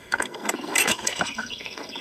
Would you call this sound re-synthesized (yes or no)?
yes